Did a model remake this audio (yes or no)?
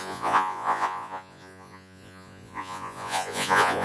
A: yes